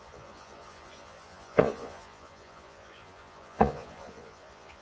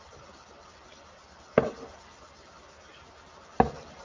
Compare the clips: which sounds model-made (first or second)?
first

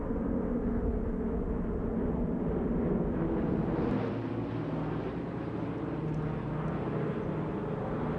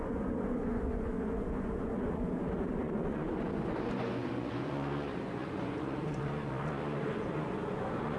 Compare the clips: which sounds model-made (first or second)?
second